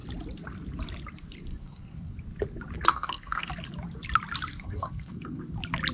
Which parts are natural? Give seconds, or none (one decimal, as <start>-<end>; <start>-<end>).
0.0-1.5; 2.1-2.9; 3.5-4.5; 5.4-5.9